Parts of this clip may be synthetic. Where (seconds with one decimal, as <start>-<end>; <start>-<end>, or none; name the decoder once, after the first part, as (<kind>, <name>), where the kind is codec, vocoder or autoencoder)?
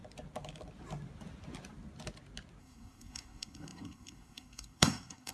2.6-5.3 (codec, SNAC)